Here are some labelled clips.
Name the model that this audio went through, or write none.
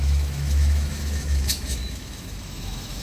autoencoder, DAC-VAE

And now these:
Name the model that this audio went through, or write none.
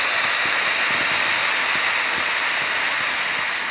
none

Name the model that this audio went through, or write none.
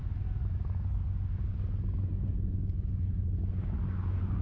none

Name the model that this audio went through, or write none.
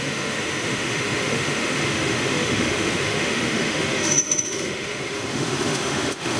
autoencoder, DAC-VAE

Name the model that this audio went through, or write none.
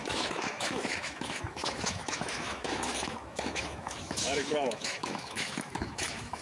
autoencoder, DAC-VAE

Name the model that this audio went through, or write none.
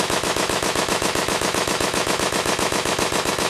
autoencoder, DAC-VAE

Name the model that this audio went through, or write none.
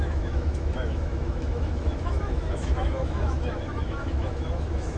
autoencoder, DAC-VAE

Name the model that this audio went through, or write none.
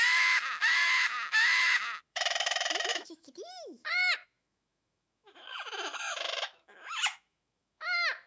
autoencoder, DAC-VAE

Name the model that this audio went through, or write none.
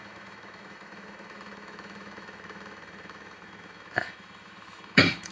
autoencoder, DAC-VAE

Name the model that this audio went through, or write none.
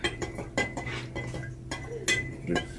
none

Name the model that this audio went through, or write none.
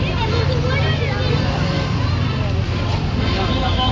none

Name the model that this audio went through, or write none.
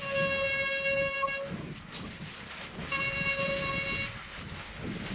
none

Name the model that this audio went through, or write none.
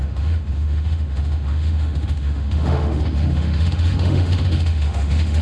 autoencoder, DAC-VAE